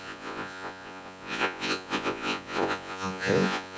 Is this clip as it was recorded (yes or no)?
no